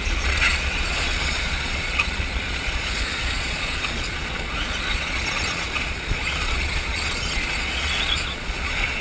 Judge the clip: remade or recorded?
remade